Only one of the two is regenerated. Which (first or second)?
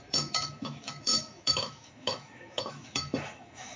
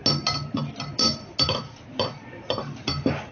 first